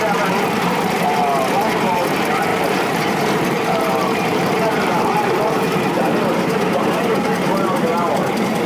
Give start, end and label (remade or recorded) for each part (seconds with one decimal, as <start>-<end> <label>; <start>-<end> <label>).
0.0-2.5 recorded; 2.5-5.9 remade; 5.9-8.7 recorded